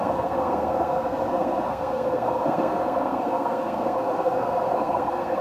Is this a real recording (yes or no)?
no